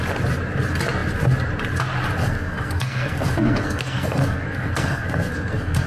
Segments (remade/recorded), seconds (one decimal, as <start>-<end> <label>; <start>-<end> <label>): 0.0-2.2 recorded; 2.2-5.9 remade